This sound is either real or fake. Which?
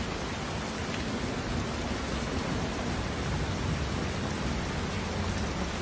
real